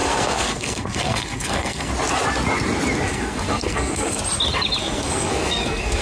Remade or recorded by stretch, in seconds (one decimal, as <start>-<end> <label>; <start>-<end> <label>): 0.0-1.9 remade; 1.9-3.1 recorded; 3.1-4.2 remade; 4.2-4.8 recorded; 4.8-6.0 remade